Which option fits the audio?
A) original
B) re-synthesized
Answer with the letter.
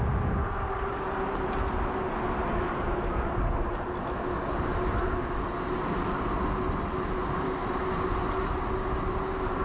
A